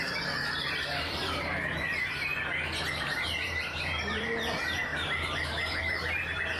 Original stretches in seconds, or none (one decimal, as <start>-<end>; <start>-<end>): 2.3-3.0